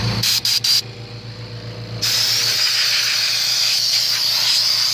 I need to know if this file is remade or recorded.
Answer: recorded